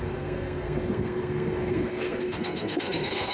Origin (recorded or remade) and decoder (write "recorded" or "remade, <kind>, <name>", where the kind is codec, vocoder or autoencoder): remade, codec, SNAC